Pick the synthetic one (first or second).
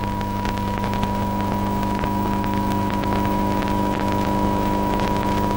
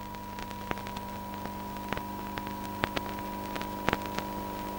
first